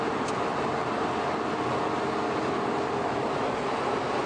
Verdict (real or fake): real